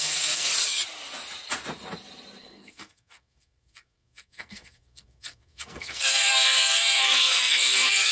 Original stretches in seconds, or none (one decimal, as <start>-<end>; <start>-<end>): 0.5-2.4